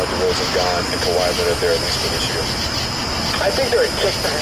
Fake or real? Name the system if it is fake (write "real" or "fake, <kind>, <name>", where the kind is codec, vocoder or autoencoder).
real